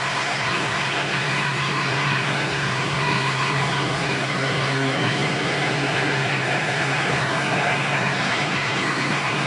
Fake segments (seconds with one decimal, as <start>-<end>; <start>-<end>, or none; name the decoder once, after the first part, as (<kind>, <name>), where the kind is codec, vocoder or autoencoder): 0.0-9.5 (codec, SNAC)